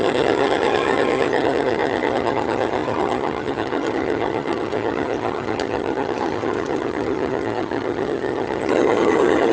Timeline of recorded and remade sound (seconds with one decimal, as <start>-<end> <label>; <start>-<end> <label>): 0.0-9.5 remade